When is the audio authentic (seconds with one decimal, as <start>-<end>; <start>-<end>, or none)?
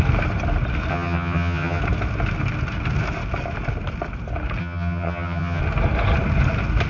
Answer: 0.0-0.9; 1.8-4.6; 5.6-6.9